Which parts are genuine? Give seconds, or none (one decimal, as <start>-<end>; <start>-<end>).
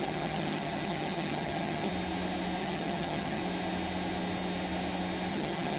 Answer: 1.9-2.6; 3.4-5.3